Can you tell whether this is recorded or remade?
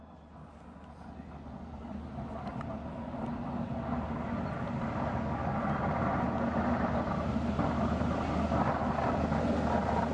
recorded